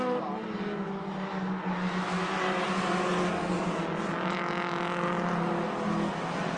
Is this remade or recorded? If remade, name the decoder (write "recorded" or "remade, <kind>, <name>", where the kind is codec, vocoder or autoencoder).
recorded